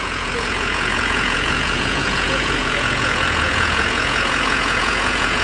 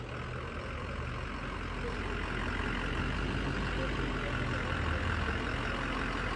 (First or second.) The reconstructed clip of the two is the first